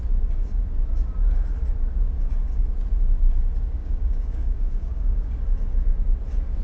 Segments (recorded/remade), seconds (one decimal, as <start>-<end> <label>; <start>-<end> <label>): 0.0-3.8 recorded; 3.8-5.3 remade; 5.3-6.6 recorded